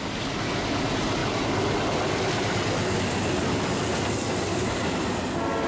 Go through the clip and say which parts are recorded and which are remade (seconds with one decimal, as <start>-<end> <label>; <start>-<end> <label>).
0.0-5.7 recorded